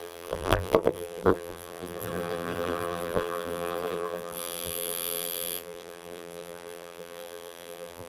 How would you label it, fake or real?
fake